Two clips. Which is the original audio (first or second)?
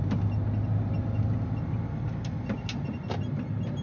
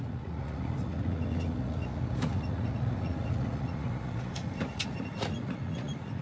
first